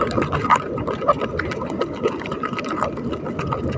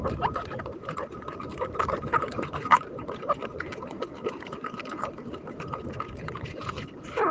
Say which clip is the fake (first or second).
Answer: second